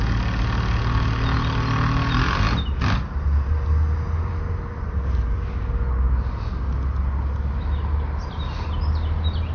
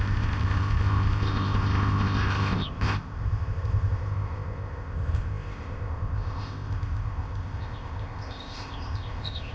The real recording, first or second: first